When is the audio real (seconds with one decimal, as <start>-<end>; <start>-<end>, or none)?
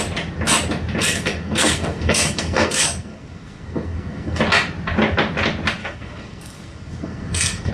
0.0-1.0; 4.4-5.8